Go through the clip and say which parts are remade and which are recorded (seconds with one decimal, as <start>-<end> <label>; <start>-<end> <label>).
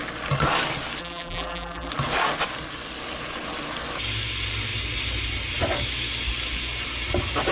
0.0-1.0 recorded; 1.0-1.9 remade; 1.9-7.5 recorded